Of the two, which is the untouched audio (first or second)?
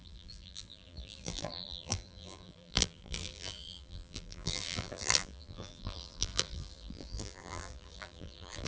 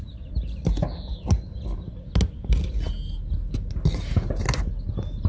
second